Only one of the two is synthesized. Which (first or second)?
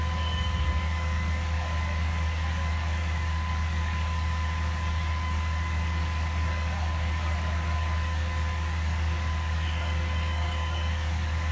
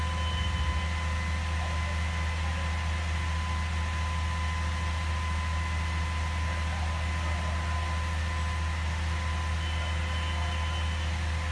first